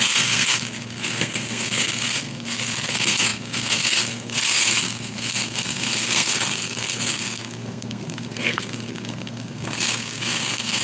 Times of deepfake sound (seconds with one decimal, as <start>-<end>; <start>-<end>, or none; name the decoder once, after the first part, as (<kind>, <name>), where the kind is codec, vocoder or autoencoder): 0.0-10.8 (codec, SNAC)